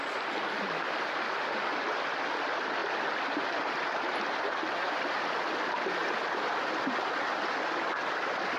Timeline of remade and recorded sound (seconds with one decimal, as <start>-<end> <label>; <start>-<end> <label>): 0.0-8.6 recorded